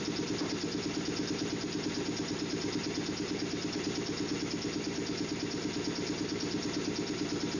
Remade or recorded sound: recorded